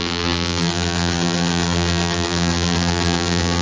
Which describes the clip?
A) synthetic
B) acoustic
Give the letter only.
A